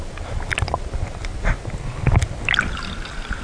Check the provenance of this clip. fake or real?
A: real